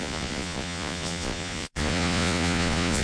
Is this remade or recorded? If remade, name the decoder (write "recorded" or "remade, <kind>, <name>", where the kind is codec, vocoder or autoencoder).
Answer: remade, vocoder, Vocos